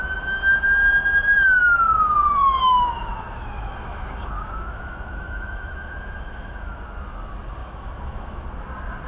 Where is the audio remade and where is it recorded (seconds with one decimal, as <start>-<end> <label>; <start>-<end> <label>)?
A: 0.0-2.4 recorded; 2.4-6.8 remade; 6.8-7.6 recorded; 7.6-8.4 remade; 8.4-9.1 recorded